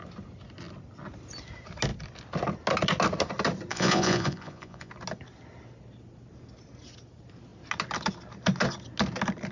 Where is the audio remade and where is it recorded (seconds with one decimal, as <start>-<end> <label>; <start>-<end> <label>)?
0.0-3.7 recorded; 3.7-4.9 remade; 4.9-9.5 recorded